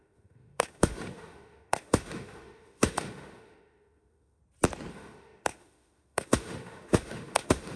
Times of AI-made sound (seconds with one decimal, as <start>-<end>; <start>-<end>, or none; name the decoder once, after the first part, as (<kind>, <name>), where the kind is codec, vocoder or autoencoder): 0.0-4.4 (autoencoder, DAC-VAE); 4.9-7.8